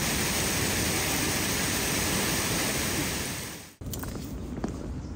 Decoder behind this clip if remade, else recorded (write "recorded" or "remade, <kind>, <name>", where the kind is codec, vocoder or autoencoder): recorded